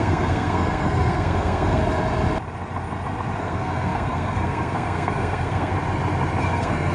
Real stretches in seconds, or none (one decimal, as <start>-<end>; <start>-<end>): 1.8-3.4; 5.7-6.4